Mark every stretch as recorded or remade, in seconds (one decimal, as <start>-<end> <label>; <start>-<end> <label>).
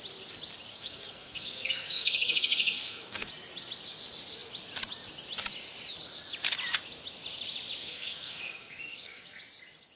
0.0-0.7 recorded; 0.7-3.3 remade; 3.3-7.8 recorded; 7.8-9.4 remade; 9.4-10.0 recorded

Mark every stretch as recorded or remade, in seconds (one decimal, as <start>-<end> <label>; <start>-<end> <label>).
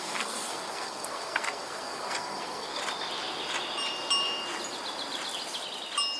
0.0-2.8 remade; 2.8-6.2 recorded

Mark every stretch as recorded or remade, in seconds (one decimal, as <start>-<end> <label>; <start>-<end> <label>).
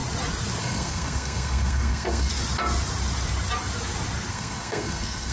0.0-0.6 recorded; 0.6-2.3 remade; 2.3-4.3 recorded; 4.3-5.3 remade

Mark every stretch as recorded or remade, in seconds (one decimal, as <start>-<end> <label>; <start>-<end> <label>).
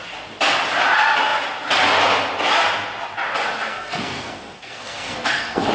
0.0-3.6 recorded; 3.6-5.7 remade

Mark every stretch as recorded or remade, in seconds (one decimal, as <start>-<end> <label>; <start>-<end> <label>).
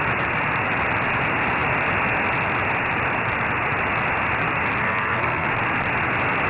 0.0-4.8 recorded; 4.8-5.5 remade; 5.5-6.5 recorded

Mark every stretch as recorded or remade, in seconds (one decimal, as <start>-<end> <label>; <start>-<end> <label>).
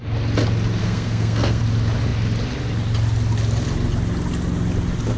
0.0-0.8 recorded; 0.8-1.6 remade; 1.6-5.2 recorded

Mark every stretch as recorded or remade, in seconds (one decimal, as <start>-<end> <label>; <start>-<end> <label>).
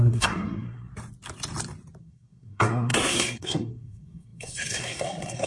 0.0-0.9 remade; 0.9-2.0 recorded; 2.0-5.5 remade